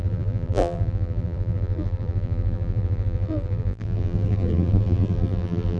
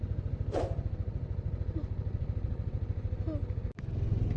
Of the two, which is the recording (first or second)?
second